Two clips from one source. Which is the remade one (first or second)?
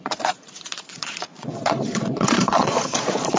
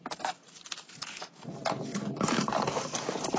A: first